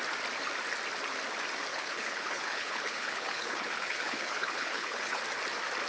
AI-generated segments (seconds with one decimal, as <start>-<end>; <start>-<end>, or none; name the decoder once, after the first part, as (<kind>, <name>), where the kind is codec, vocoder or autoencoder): 1.7-5.2 (codec, HILCodec)